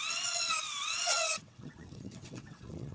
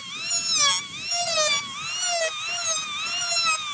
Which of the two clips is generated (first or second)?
first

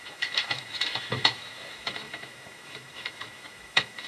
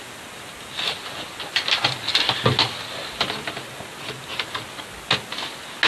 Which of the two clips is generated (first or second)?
first